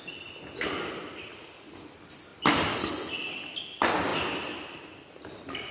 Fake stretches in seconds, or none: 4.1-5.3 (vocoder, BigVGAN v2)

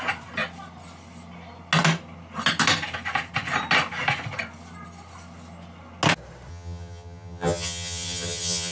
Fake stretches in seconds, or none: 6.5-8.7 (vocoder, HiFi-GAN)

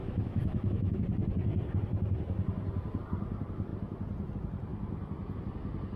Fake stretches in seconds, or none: 0.0-1.0 (autoencoder, DAC-VAE)

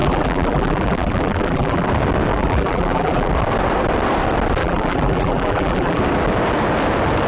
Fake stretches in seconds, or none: 0.0-1.9 (vocoder, BigVGAN v2); 2.3-3.3; 4.6-6.0

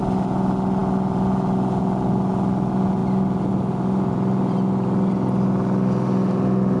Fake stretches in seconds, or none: none

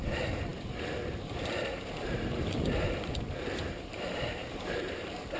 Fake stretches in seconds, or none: 0.0-5.4 (vocoder, BigVGAN v2)

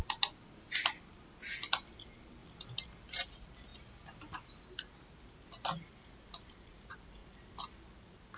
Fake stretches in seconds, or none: 0.0-2.4 (vocoder, BigVGAN v2); 3.0-3.7; 5.9-7.2; 7.9-8.4

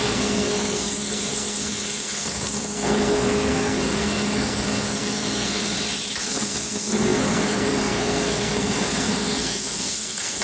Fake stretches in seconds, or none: 0.0-5.6 (codec, SNAC); 6.2-10.4